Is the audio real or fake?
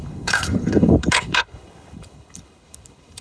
fake